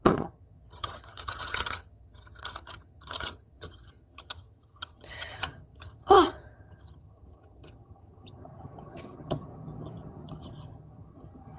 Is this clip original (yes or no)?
no